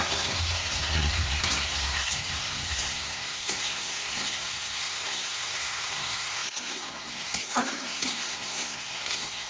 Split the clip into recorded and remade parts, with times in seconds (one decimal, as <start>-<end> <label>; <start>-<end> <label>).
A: 0.0-9.5 remade